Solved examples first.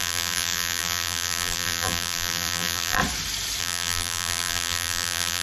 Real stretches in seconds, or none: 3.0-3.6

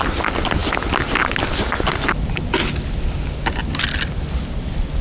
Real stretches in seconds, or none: 0.0-5.0

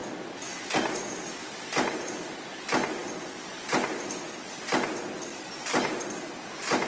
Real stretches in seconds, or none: 0.0-6.9